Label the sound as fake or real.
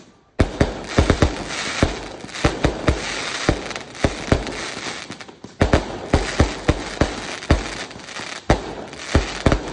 real